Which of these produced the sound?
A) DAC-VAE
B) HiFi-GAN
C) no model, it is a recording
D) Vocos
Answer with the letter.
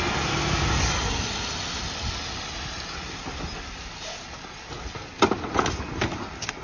C